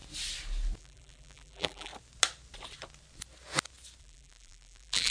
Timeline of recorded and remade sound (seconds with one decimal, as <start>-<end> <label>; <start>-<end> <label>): 0.0-0.8 recorded; 0.8-1.9 remade; 1.9-4.0 recorded; 4.0-5.1 remade